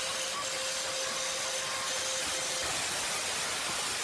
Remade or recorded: recorded